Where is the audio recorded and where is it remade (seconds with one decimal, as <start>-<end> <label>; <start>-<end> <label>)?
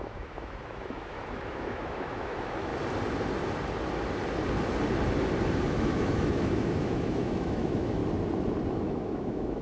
0.0-2.7 remade; 2.7-5.7 recorded; 5.7-8.0 remade; 8.0-8.7 recorded; 8.7-9.6 remade